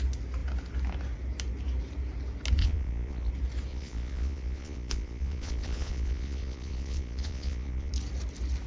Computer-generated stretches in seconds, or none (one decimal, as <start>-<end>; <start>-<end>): 2.6-3.3; 3.7-7.9

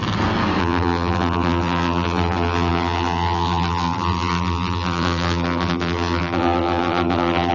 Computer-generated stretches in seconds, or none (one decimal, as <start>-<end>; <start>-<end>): 0.6-7.5

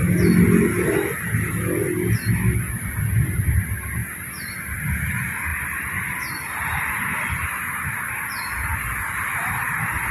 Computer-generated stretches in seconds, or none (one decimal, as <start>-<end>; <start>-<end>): 5.5-7.6

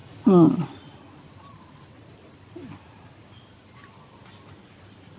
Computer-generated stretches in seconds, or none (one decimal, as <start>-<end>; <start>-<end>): 0.0-5.2

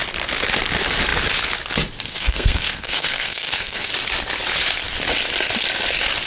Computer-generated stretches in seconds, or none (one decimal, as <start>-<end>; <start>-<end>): 2.1-3.9